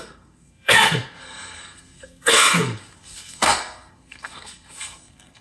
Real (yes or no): no